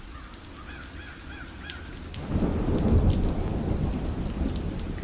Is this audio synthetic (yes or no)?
no